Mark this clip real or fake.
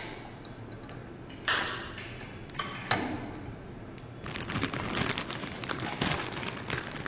real